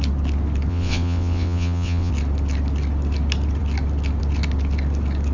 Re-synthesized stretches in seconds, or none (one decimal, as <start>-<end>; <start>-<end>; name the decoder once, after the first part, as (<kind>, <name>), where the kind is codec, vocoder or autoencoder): 0.7-2.1 (vocoder, WaveNeXt)